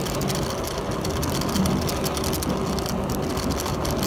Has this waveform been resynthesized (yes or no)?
no